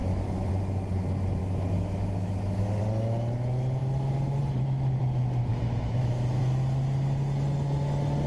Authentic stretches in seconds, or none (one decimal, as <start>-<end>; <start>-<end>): 0.5-1.4; 2.8-5.5; 6.4-8.3